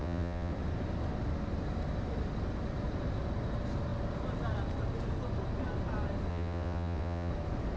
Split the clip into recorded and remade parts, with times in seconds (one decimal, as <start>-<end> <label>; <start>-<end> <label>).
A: 0.0-0.5 remade; 0.5-6.3 recorded; 6.3-7.3 remade; 7.3-7.8 recorded